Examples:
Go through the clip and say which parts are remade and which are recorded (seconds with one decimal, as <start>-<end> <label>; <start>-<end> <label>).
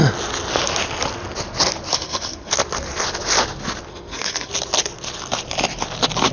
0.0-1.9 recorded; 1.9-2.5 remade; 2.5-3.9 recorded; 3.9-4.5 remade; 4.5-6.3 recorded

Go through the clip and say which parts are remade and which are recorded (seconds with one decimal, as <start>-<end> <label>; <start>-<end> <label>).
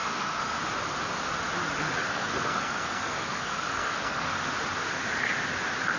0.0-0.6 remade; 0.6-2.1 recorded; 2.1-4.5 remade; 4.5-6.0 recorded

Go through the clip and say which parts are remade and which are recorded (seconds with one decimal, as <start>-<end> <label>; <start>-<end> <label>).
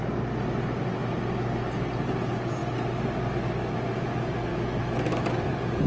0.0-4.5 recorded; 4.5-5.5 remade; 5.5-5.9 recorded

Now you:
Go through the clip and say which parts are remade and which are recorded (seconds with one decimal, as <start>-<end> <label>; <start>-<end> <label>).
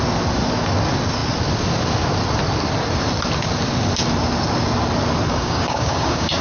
0.0-5.3 recorded; 5.3-6.4 remade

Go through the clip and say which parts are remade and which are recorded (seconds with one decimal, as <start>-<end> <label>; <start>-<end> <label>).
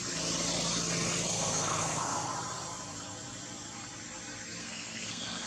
0.0-1.3 recorded; 1.3-2.3 remade; 2.3-4.6 recorded; 4.6-5.5 remade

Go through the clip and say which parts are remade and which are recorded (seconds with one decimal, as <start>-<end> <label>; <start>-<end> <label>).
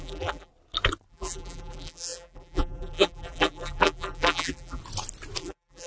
0.0-0.5 remade; 0.5-1.1 recorded; 1.1-4.8 remade; 4.8-5.4 recorded; 5.4-5.9 remade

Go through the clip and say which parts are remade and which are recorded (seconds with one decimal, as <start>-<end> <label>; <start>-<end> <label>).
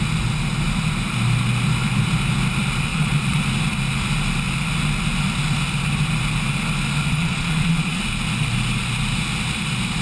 0.0-2.9 recorded; 2.9-3.4 remade; 3.4-7.1 recorded; 7.1-8.0 remade; 8.0-10.0 recorded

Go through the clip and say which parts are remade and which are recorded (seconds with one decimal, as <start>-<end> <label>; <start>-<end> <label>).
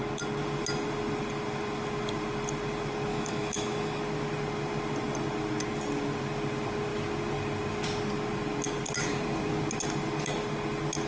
0.0-3.1 recorded; 3.1-4.0 remade; 4.0-11.1 recorded